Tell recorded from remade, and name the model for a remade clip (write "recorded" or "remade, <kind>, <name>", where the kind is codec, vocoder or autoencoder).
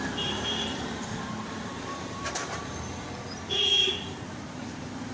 remade, vocoder, BigVGAN v2